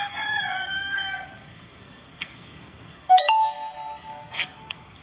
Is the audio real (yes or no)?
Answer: no